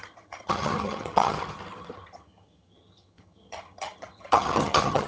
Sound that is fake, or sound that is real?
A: fake